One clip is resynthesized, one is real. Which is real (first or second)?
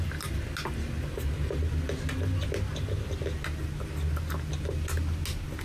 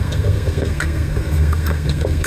first